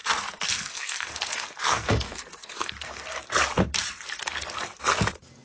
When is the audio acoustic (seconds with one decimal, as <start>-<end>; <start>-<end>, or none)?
3.2-5.4